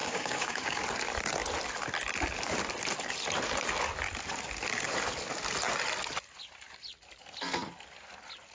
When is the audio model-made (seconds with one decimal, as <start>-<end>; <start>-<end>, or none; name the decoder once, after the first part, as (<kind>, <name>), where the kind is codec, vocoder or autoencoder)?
0.0-0.8 (codec, DAC)